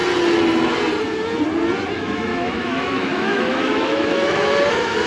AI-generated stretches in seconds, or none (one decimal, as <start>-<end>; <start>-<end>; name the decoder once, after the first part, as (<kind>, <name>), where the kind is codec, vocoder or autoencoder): 1.9-5.1 (autoencoder, DAC-VAE)